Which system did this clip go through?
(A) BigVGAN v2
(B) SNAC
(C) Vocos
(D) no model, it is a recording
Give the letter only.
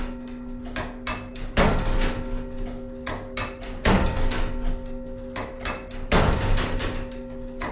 D